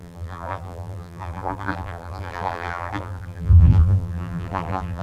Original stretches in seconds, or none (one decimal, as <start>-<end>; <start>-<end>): none